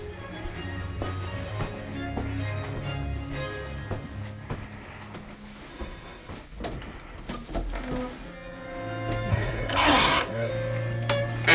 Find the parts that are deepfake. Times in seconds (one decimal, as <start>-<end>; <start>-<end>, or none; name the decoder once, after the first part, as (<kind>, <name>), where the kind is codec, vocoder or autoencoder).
5.7-6.3 (codec, SNAC); 9.3-10.5